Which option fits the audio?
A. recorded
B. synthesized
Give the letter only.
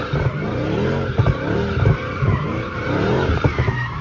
B